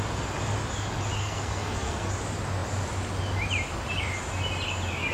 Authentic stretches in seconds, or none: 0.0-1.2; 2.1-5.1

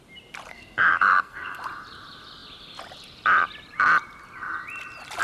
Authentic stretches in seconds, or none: 0.0-0.5; 1.6-5.2